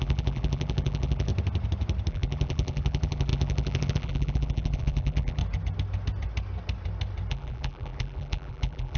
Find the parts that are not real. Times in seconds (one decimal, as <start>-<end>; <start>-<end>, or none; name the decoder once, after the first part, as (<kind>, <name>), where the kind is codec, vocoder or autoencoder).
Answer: 0.0-1.3 (vocoder, BigVGAN v2); 2.1-5.4; 7.3-9.0